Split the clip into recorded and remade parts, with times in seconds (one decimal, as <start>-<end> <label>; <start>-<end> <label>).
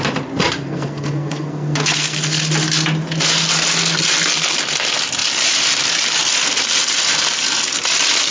0.0-0.6 recorded; 0.6-2.4 remade; 2.4-8.3 recorded